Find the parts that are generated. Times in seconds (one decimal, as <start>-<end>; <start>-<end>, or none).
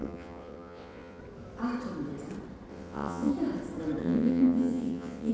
0.0-1.2; 2.7-3.3; 4.0-5.3